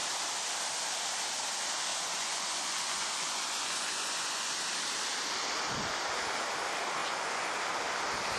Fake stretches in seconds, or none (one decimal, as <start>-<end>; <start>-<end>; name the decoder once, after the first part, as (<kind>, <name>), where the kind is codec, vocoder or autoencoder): 1.9-4.5 (vocoder, Vocos); 7.0-7.5